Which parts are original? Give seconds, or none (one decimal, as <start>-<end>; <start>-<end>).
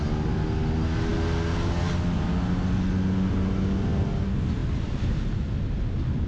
0.0-6.3